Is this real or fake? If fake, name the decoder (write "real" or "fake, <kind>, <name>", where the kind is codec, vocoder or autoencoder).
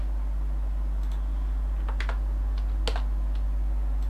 real